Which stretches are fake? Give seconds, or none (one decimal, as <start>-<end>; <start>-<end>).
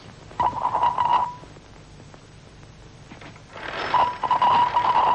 none